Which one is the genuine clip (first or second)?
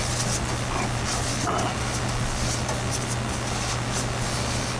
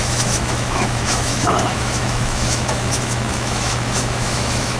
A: first